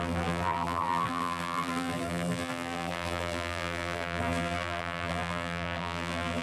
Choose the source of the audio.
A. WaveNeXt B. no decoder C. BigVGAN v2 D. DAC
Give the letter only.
C